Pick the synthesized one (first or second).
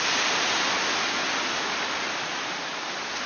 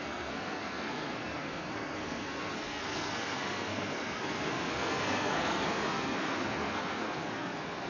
second